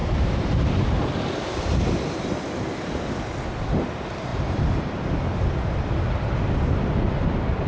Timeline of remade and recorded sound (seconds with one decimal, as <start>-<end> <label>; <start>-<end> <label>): 0.0-1.6 remade; 1.6-4.3 recorded; 4.3-5.5 remade; 5.5-7.7 recorded